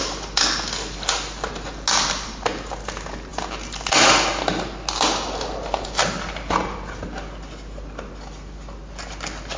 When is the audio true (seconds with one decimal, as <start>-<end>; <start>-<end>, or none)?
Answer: 0.0-9.6